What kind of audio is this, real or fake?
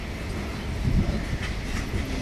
real